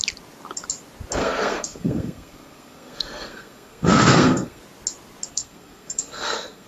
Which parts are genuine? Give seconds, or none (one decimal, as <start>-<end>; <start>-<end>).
0.0-1.2; 4.6-5.3

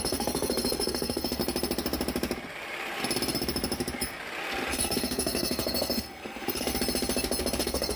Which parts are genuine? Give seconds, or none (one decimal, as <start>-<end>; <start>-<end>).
1.4-4.7; 6.7-7.6